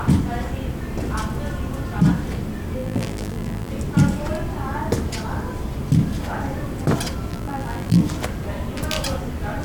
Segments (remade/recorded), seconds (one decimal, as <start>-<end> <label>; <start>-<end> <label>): 0.0-2.8 recorded; 2.8-3.7 remade; 3.7-7.3 recorded; 7.3-8.0 remade; 8.0-9.6 recorded

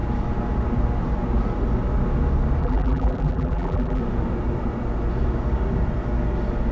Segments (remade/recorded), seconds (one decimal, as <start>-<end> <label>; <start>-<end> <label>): 0.0-2.6 recorded; 2.6-4.0 remade; 4.0-6.7 recorded

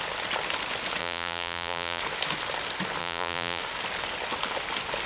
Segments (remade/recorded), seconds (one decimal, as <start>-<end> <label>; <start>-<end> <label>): 0.0-1.0 recorded; 1.0-2.0 remade; 2.0-3.0 recorded; 3.0-3.6 remade; 3.6-5.1 recorded